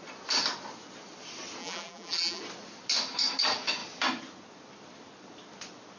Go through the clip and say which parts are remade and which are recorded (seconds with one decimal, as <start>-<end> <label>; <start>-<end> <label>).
0.0-1.6 recorded; 1.6-2.4 remade; 2.4-6.0 recorded